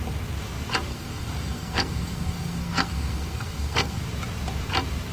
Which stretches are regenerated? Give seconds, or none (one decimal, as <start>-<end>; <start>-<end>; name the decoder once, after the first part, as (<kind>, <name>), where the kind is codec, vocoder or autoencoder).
0.9-4.0 (codec, SNAC)